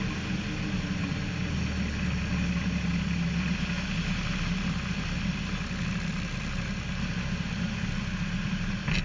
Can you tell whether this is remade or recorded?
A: recorded